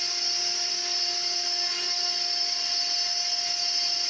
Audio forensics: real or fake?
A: real